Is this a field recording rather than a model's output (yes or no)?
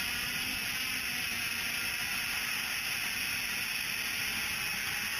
yes